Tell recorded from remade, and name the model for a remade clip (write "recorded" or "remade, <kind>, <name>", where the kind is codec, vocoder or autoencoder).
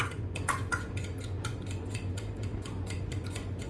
remade, vocoder, Vocos